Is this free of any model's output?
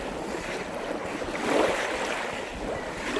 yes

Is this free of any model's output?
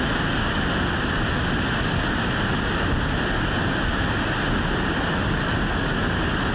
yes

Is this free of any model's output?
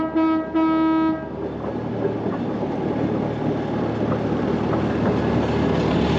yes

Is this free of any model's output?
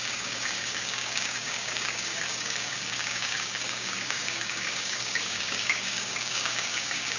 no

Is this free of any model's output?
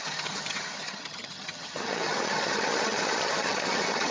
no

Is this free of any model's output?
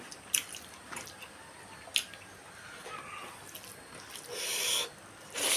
yes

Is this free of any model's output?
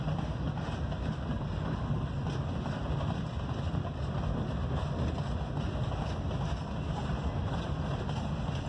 yes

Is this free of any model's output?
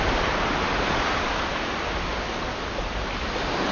yes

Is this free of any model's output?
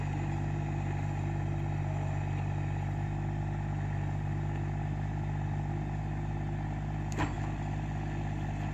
yes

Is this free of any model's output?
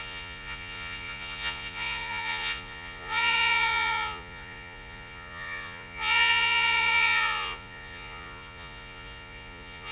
no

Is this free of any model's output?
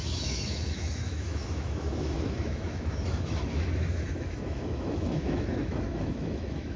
no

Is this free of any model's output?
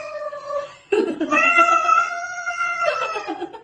no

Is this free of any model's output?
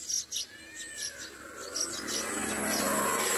yes